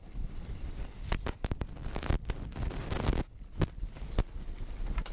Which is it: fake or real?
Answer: real